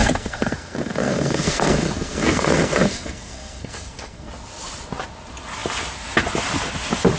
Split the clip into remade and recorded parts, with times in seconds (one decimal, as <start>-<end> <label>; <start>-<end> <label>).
0.0-4.3 remade; 4.3-7.2 recorded